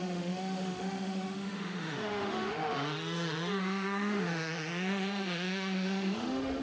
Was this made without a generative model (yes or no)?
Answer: no